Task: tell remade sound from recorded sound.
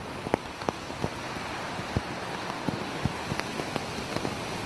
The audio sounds recorded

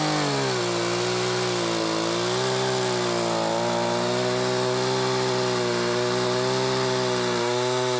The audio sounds recorded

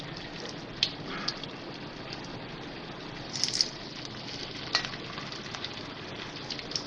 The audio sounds recorded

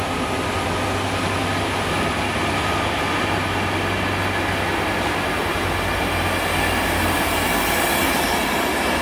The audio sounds recorded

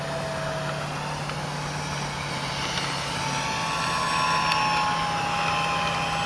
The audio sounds recorded